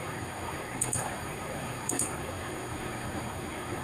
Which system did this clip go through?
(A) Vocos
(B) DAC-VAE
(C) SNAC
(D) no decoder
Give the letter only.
C